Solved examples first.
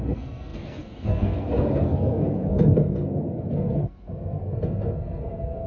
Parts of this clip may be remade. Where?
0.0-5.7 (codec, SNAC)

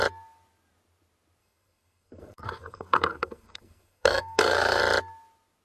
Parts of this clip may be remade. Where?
1.4-4.8 (codec, SNAC)

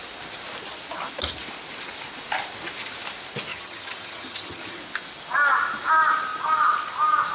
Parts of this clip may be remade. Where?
3.5-4.8 (vocoder, HiFi-GAN)

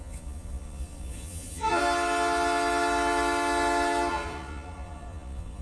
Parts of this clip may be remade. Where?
0.0-1.8 (vocoder, Vocos); 4.1-5.6